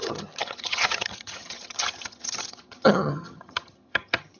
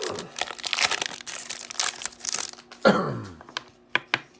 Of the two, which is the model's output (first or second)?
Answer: first